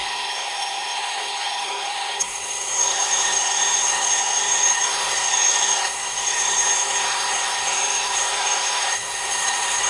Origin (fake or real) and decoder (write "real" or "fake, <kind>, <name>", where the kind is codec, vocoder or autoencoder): fake, codec, SNAC